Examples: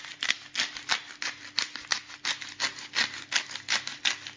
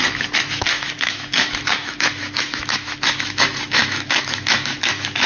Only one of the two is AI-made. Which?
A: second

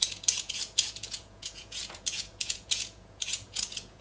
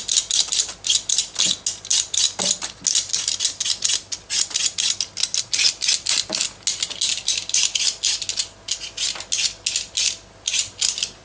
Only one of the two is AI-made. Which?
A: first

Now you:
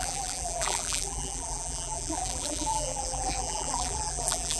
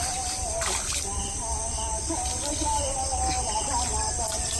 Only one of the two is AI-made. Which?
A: first